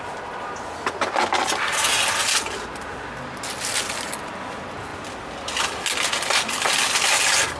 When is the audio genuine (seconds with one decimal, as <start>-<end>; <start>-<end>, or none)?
0.0-7.6